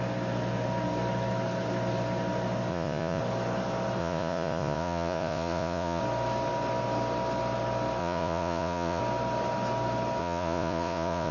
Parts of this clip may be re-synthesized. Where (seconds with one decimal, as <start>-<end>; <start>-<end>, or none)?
2.7-3.2; 4.0-6.0; 8.0-9.0; 10.2-11.3